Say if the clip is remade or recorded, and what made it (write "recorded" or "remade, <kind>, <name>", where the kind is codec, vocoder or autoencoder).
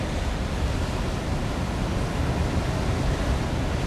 recorded